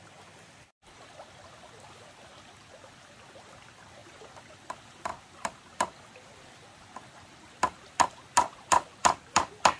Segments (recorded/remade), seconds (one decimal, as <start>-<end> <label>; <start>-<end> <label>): 0.0-4.0 recorded; 4.0-4.5 remade; 4.5-9.8 recorded